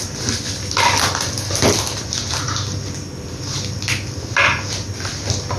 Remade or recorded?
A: recorded